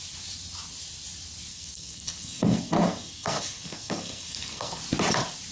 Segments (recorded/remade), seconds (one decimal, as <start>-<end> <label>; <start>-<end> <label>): 0.0-1.5 recorded; 1.5-4.8 remade; 4.8-5.5 recorded